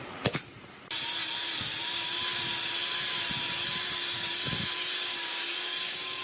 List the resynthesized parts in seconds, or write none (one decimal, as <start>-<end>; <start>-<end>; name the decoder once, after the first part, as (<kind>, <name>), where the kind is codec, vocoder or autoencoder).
5.1-6.2 (codec, DAC)